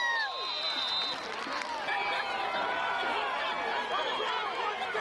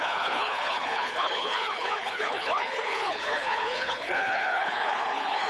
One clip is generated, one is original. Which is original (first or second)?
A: first